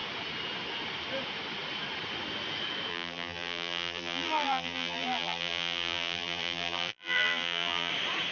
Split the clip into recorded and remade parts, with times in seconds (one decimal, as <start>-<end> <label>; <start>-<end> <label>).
0.0-2.9 recorded; 2.9-7.9 remade; 7.9-8.3 recorded